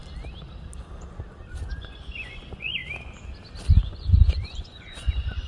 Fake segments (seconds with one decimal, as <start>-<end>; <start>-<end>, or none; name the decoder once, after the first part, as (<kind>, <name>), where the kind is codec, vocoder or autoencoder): 1.8-2.8 (vocoder, Vocos); 3.8-5.5